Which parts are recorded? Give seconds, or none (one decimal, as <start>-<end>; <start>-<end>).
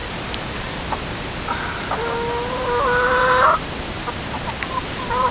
0.0-5.3